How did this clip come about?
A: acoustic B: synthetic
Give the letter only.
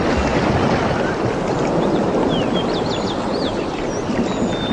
A